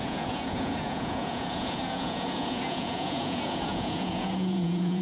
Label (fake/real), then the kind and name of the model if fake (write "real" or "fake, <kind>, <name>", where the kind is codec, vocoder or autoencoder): fake, vocoder, Vocos